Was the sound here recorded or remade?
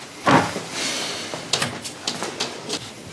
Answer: recorded